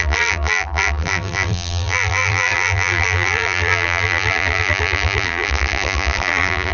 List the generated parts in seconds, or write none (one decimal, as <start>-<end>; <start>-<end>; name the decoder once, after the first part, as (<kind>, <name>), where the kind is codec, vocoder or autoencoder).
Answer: 0.0-6.7 (vocoder, BigVGAN v2)